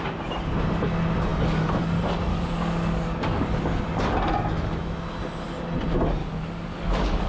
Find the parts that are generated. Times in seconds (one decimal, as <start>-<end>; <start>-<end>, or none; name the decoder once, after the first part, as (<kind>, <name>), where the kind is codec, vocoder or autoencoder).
2.3-3.8 (codec, DAC); 6.2-7.3